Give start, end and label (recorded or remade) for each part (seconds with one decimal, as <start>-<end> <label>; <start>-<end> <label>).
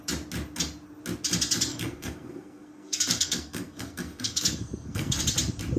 0.0-1.7 recorded; 1.7-5.2 remade; 5.2-5.8 recorded